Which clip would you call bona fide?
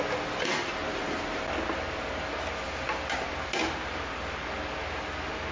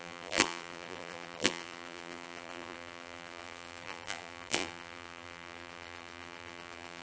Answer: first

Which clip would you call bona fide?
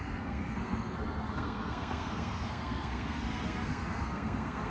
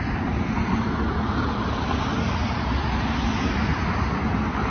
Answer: second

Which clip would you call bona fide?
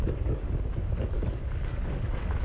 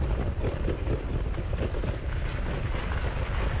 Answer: second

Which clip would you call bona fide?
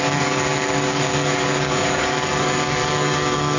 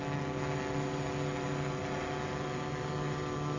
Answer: second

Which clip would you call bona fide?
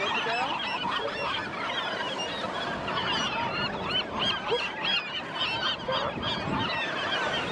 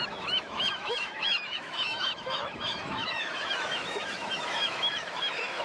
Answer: first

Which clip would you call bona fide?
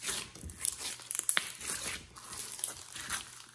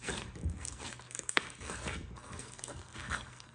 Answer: first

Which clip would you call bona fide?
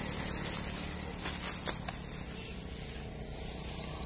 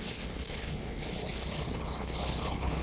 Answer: first